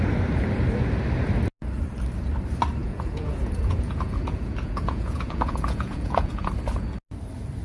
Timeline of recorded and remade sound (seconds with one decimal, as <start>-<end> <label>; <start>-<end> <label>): 0.0-2.8 recorded; 2.8-6.5 remade; 6.5-7.6 recorded